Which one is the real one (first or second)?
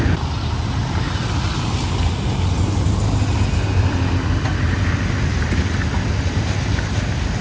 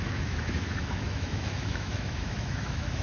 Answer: first